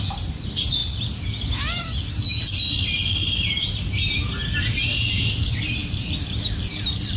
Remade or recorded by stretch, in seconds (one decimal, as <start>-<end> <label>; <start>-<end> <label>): 0.0-7.2 recorded